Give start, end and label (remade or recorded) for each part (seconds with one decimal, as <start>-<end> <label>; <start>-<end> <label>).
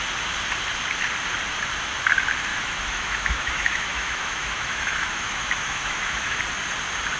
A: 0.0-2.5 recorded; 2.5-6.4 remade; 6.4-7.2 recorded